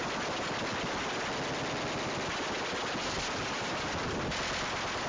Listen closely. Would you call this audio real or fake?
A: real